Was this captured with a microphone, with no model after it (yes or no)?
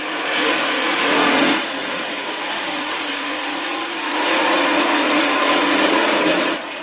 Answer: no